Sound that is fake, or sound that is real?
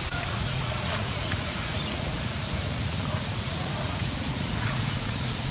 fake